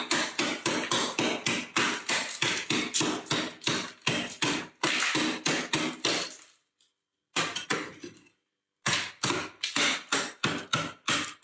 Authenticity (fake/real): real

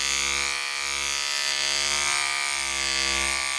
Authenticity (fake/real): real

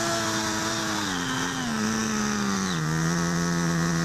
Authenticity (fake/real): real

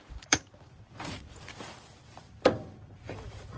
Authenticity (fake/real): fake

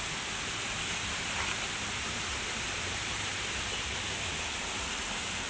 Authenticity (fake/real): fake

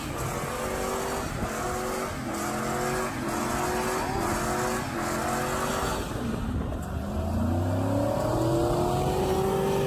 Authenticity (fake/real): real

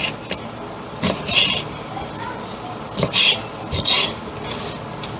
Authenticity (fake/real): fake